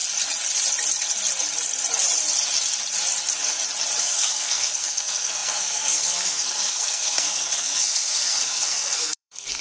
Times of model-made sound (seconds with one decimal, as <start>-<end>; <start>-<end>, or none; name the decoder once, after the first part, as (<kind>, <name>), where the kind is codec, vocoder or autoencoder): 4.0-9.6 (codec, SNAC)